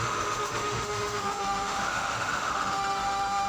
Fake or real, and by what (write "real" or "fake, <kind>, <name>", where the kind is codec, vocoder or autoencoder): fake, autoencoder, DAC-VAE